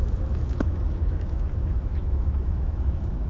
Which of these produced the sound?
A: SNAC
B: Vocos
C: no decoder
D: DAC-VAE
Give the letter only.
D